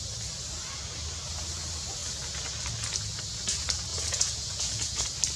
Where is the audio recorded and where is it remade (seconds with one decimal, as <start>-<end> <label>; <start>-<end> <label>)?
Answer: 0.0-3.9 recorded; 3.9-5.0 remade; 5.0-5.4 recorded